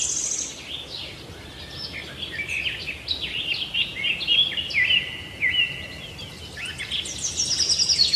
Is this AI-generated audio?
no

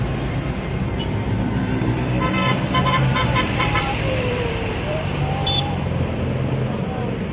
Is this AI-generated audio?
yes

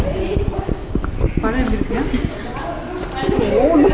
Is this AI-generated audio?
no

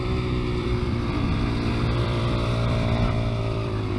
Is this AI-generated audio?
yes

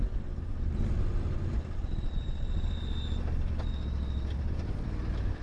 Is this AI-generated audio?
no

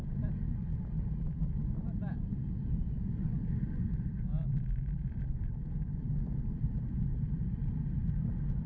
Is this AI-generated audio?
yes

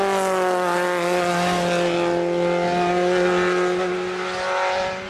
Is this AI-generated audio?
no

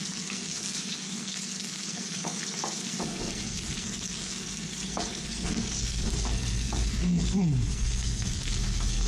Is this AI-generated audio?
yes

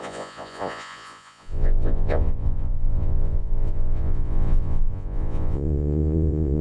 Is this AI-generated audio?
yes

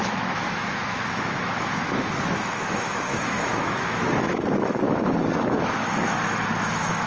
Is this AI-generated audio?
yes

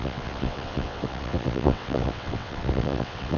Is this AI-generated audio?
yes